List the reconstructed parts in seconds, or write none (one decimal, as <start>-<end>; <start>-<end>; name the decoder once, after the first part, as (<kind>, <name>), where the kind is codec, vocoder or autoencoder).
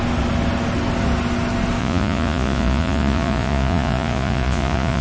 1.8-5.0 (vocoder, Vocos)